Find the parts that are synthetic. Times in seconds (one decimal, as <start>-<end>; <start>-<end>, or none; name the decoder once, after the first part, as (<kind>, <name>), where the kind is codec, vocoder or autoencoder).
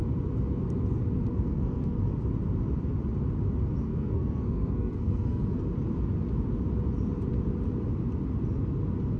1.3-2.1 (codec, SNAC); 3.9-5.6